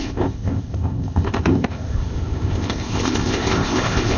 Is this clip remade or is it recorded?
remade